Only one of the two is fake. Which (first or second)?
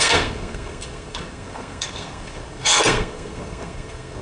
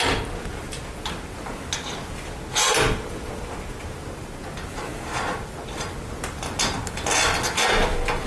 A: first